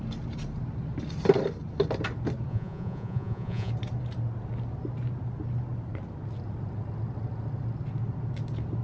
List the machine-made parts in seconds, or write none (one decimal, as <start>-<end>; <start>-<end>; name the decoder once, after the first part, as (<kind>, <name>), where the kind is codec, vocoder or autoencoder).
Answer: 2.5-3.7 (vocoder, Vocos)